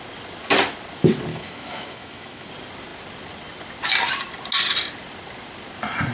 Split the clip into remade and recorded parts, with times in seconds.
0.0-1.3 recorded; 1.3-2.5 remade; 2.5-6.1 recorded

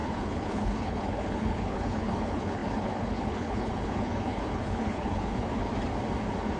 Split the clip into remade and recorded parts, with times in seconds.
0.0-5.7 remade; 5.7-6.6 recorded

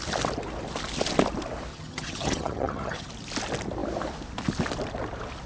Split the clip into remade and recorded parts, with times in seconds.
0.0-1.7 recorded; 1.7-3.1 remade; 3.1-5.5 recorded

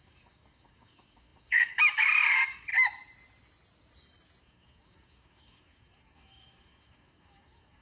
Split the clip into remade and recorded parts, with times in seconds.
0.0-2.7 remade; 2.7-4.4 recorded; 4.4-7.8 remade

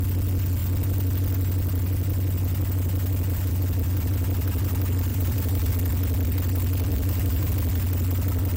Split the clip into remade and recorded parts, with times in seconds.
0.0-5.1 recorded; 5.1-5.7 remade; 5.7-6.9 recorded; 6.9-7.5 remade; 7.5-8.6 recorded